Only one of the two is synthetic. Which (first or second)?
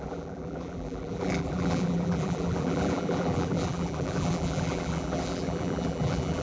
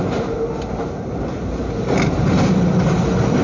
first